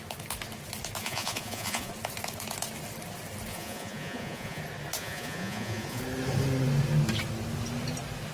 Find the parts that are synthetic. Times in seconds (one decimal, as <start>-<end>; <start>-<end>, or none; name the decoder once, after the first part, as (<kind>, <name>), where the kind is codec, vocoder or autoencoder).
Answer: 1.0-1.9 (vocoder, Vocos); 3.5-4.6; 5.0-6.0